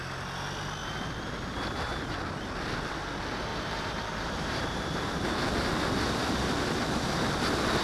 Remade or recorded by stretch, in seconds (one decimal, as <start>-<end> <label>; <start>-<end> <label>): 0.0-3.5 recorded; 3.5-4.6 remade; 4.6-7.8 recorded